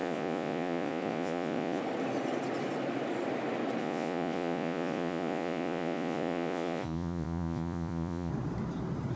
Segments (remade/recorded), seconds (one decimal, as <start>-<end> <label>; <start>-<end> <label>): 0.0-1.8 remade; 1.8-3.8 recorded; 3.8-8.3 remade; 8.3-9.2 recorded